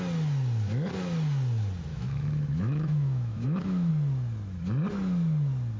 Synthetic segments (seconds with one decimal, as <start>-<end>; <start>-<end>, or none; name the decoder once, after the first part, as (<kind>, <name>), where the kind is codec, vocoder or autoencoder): 1.9-3.9 (autoencoder, DAC-VAE)